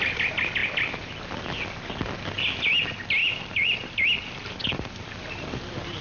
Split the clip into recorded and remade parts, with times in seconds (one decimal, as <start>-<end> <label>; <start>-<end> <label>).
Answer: 0.0-0.6 recorded; 0.6-1.2 remade; 1.2-3.2 recorded; 3.2-5.3 remade; 5.3-6.0 recorded